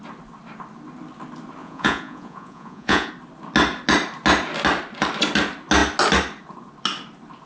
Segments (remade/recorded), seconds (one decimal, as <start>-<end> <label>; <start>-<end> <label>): 0.0-1.6 recorded; 1.6-3.1 remade; 3.1-7.5 recorded